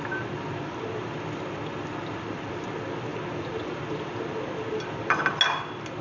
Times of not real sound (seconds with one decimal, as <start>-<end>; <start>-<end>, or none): none